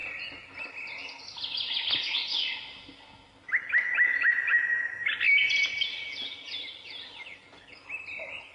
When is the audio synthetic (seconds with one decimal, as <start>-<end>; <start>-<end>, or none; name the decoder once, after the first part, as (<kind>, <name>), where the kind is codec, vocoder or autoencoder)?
none